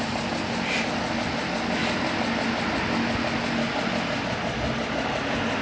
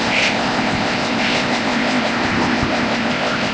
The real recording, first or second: first